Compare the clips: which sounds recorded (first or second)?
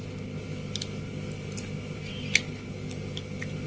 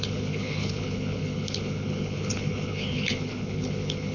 first